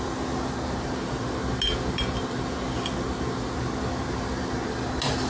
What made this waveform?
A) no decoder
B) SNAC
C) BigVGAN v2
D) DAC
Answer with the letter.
A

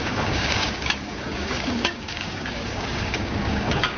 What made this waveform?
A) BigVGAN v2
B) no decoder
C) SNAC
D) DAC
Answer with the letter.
D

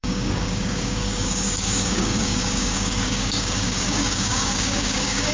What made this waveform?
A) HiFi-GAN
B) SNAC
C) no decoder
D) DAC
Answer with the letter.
D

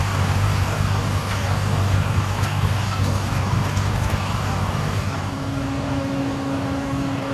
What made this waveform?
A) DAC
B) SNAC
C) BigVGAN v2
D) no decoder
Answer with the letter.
A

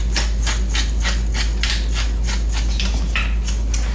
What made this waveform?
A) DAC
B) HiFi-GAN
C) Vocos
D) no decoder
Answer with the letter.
D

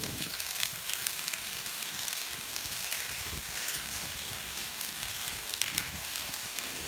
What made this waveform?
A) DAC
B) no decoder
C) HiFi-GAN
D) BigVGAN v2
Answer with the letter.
A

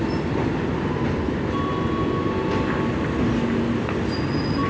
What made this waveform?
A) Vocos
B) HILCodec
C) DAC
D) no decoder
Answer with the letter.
D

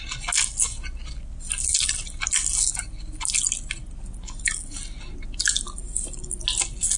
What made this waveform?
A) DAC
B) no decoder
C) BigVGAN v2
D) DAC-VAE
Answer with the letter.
B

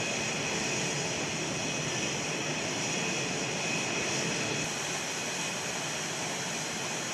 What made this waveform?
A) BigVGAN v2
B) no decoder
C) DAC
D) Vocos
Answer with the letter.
B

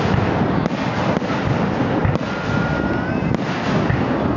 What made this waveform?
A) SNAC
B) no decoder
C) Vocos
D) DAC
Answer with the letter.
B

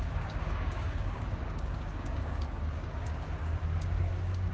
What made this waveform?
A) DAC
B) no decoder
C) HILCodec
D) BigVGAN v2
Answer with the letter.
A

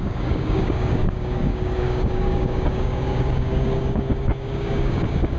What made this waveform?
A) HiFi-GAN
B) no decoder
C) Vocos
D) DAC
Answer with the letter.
D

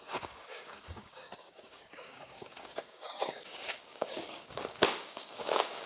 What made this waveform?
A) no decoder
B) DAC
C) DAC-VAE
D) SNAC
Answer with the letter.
B